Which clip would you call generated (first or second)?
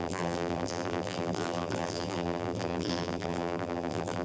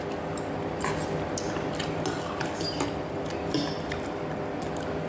first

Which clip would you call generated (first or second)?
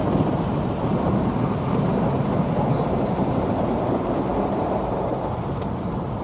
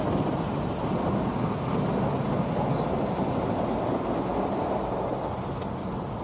first